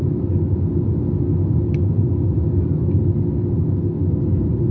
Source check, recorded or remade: recorded